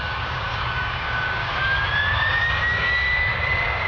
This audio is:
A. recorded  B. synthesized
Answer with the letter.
B